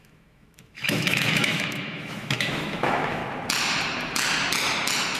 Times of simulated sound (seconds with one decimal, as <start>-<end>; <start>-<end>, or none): 0.0-3.2